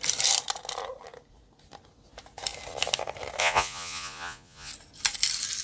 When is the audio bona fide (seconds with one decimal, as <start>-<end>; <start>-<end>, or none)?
0.0-3.4; 4.7-5.6